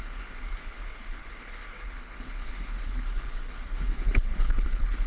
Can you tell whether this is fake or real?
fake